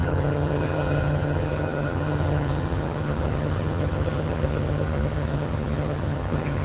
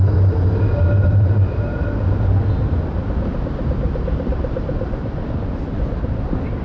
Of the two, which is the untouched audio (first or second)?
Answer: second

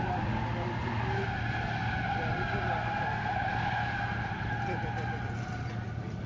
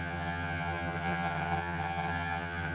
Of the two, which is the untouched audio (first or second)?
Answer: first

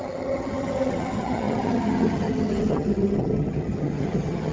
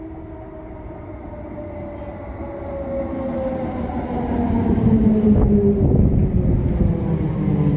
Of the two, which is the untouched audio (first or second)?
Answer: second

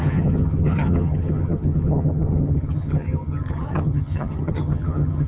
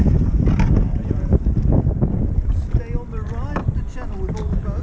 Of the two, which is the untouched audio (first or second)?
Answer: second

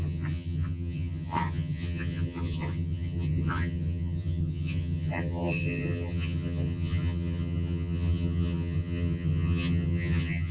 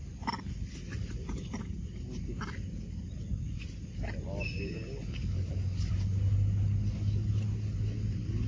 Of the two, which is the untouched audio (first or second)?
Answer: second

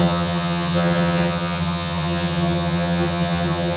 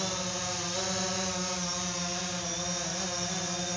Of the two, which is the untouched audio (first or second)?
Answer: second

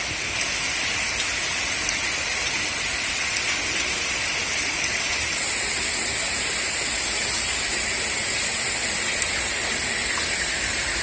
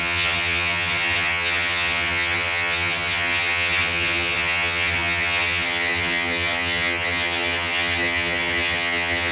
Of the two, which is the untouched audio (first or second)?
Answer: first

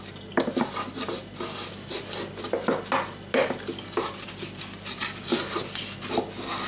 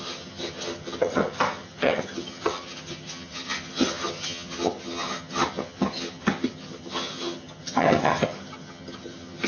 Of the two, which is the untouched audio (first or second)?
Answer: first